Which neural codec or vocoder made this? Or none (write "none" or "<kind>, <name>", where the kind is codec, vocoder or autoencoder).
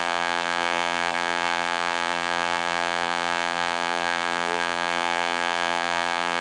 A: vocoder, BigVGAN v2